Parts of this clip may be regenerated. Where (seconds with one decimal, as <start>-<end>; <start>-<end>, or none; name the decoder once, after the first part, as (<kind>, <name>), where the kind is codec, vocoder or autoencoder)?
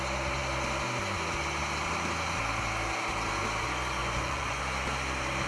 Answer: 4.0-4.6 (vocoder, Vocos)